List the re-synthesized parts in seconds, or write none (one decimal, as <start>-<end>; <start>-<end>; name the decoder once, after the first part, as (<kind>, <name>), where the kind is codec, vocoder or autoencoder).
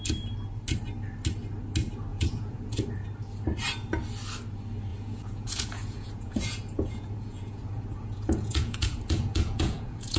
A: 2.1-2.8 (vocoder, Vocos); 4.9-10.2